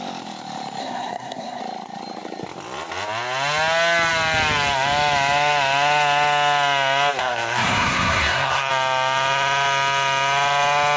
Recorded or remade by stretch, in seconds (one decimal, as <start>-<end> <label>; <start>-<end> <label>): 0.0-0.8 recorded; 0.8-1.6 remade; 1.6-7.2 recorded; 7.2-8.7 remade; 8.7-11.0 recorded